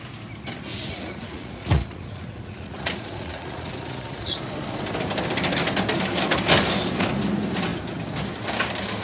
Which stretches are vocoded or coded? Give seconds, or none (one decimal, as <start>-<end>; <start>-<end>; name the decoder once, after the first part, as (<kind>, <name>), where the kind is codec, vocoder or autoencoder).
0.7-4.4 (vocoder, Vocos)